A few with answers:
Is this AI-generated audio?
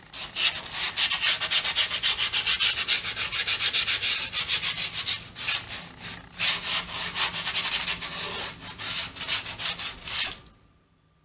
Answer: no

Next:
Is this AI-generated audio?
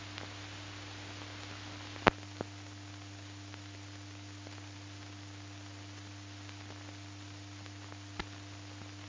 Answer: no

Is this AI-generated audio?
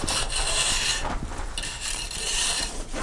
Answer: yes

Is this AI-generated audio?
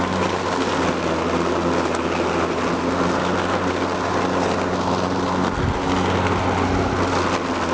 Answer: no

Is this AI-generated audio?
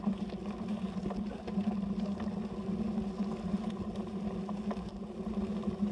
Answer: no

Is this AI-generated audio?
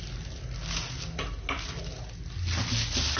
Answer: no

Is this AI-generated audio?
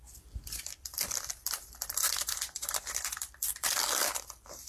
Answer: yes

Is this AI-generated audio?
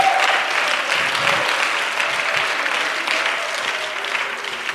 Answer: no